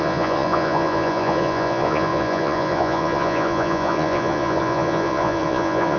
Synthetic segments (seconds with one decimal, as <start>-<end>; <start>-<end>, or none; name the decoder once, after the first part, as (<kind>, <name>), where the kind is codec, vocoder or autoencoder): 0.0-6.0 (vocoder, Vocos)